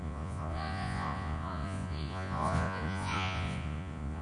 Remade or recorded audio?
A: remade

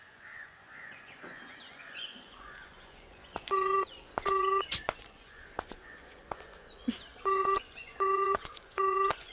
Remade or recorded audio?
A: remade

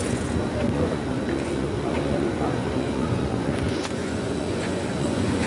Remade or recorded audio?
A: remade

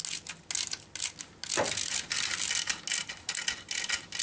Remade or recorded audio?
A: recorded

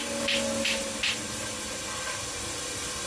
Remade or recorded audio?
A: recorded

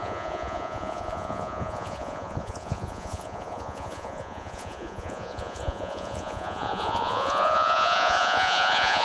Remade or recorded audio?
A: remade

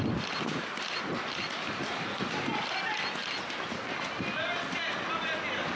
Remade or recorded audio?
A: recorded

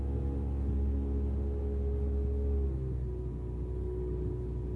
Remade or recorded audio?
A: recorded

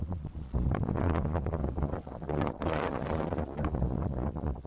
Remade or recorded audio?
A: remade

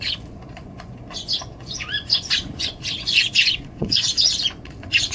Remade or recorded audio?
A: remade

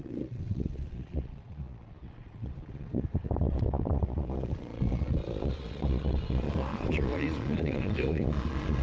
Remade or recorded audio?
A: remade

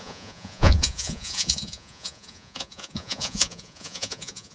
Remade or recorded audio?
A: remade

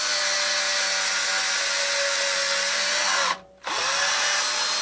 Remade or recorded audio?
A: recorded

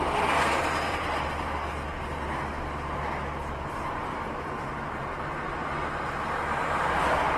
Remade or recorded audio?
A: recorded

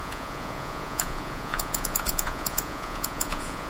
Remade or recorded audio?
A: remade